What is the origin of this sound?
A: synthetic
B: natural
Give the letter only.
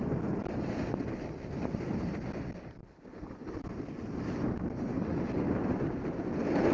A